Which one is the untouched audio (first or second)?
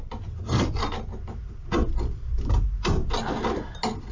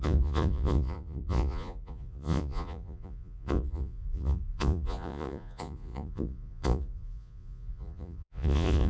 first